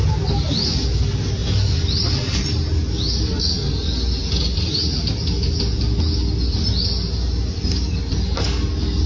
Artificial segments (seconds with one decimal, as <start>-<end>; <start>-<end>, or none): none